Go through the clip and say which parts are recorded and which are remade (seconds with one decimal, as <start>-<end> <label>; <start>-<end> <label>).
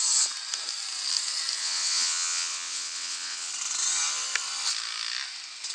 0.0-1.6 recorded; 1.6-3.5 remade; 3.5-5.7 recorded